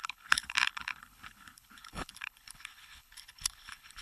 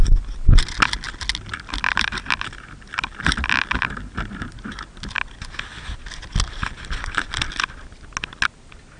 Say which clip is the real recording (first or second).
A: second